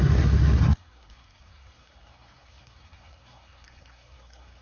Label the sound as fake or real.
fake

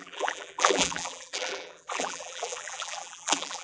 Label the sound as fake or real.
fake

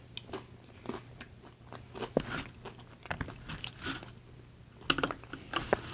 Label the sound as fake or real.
real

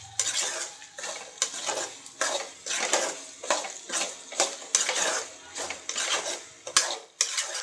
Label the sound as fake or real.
real